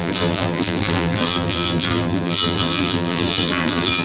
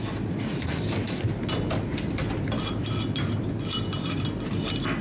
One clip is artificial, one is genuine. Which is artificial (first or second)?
first